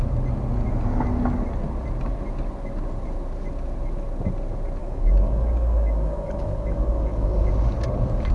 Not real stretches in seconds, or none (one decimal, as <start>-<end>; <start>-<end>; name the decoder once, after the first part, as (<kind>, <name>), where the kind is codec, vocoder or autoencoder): 4.8-7.5 (codec, DAC)